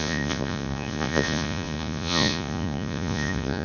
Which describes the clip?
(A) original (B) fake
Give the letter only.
B